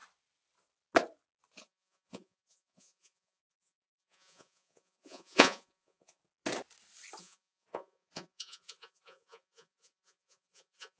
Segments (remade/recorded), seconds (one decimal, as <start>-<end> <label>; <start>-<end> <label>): 0.0-1.6 recorded; 1.6-6.2 remade; 6.2-7.2 recorded; 7.2-11.0 remade